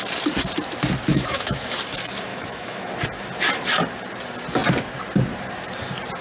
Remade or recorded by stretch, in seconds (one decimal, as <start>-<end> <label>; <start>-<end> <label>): 0.0-1.1 recorded; 1.1-1.7 remade; 1.7-2.3 recorded; 2.3-2.9 remade; 2.9-6.2 recorded